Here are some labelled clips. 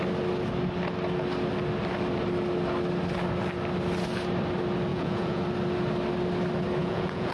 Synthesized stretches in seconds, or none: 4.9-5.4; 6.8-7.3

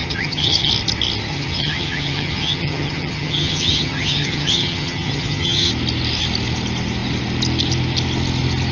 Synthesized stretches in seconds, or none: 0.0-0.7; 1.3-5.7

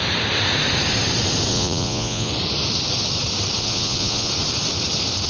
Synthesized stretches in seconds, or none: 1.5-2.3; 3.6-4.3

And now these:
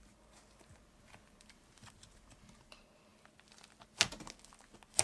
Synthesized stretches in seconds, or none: none

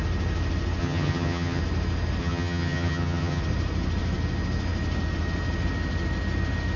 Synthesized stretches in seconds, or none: 0.8-1.6; 2.2-3.4

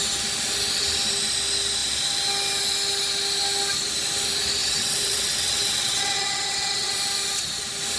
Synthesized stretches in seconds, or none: 4.6-7.0

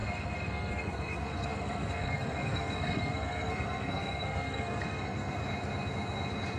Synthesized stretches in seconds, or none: 0.0-5.4

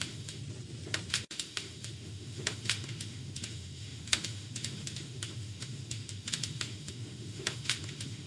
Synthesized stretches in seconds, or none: 0.0-0.4; 1.1-8.3